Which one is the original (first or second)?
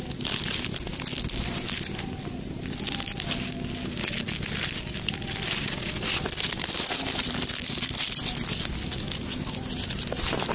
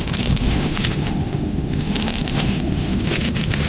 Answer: first